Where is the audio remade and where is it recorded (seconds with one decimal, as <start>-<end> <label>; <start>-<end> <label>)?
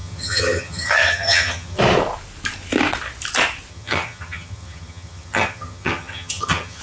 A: 0.0-1.8 remade; 1.8-3.7 recorded; 3.7-6.8 remade